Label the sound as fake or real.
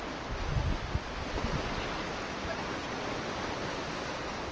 real